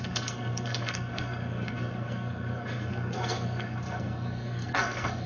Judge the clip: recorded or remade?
remade